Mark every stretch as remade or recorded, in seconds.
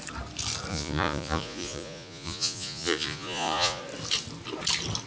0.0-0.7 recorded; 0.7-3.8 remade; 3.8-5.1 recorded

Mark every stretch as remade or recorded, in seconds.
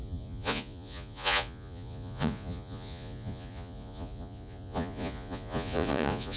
0.0-6.4 remade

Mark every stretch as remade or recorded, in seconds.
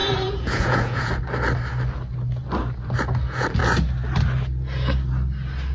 0.0-1.1 remade; 1.1-5.7 recorded